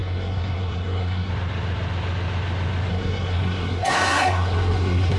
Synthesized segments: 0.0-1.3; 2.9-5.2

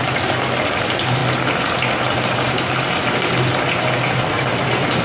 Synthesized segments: none

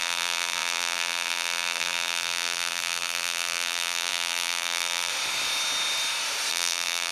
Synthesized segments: 0.0-5.1; 6.5-7.1

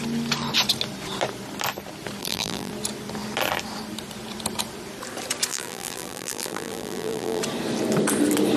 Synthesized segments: 2.2-2.7; 5.5-7.4

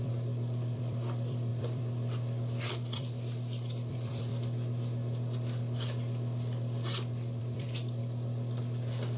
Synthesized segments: 0.0-4.3; 7.4-9.2

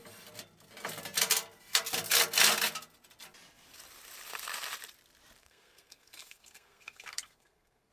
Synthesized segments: 5.4-7.9

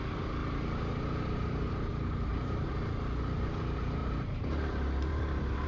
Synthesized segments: 0.4-2.9; 4.0-5.1

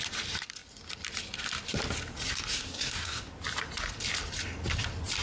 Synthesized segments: 2.5-3.3